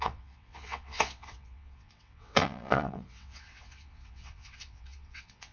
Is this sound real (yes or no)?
no